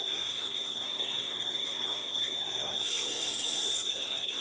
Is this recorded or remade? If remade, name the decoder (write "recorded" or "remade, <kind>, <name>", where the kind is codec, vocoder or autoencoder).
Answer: remade, codec, SNAC